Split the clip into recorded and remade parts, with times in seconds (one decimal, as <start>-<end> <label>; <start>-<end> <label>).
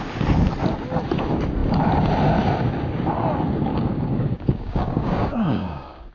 0.0-3.7 recorded; 3.7-6.1 remade